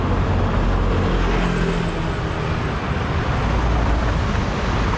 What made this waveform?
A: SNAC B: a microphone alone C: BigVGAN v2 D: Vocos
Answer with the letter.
B